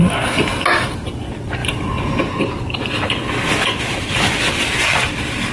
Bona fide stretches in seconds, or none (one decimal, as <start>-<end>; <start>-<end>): 0.0-5.5